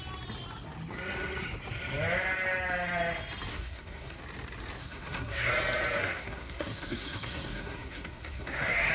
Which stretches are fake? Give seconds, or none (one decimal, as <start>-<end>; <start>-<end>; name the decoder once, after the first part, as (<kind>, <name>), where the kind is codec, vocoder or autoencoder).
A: 3.5-4.2 (codec, SNAC); 4.8-5.5; 6.0-8.9

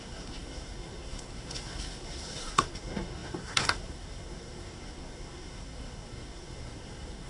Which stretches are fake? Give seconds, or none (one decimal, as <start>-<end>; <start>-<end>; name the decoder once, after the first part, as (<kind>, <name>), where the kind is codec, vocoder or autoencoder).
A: 0.0-7.3 (codec, SNAC)

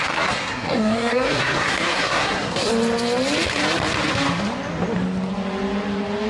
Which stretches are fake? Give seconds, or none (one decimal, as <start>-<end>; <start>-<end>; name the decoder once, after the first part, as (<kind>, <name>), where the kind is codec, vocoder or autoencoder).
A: 0.0-2.7 (codec, SNAC)

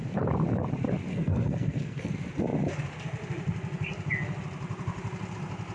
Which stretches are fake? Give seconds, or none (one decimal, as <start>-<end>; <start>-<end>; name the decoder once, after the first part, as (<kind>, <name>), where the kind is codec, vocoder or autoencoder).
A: 1.1-2.1 (codec, SNAC)